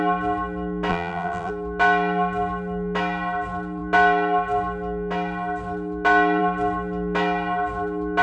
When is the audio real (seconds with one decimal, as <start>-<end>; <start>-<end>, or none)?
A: 0.0-0.9; 1.5-8.2